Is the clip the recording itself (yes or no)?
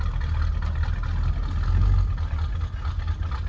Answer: yes